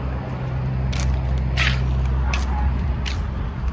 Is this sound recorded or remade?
recorded